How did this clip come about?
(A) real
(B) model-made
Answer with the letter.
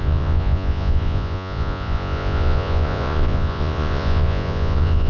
B